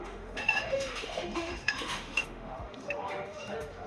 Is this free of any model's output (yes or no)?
no